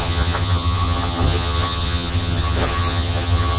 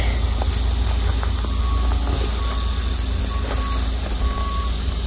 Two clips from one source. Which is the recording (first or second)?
second